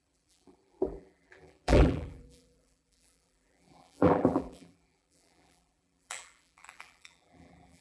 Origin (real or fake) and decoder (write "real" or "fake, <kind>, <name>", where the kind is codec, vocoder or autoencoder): fake, vocoder, BigVGAN v2